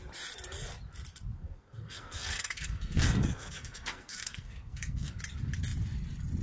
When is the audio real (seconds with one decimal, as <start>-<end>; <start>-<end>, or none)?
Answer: 0.0-1.4; 5.2-6.4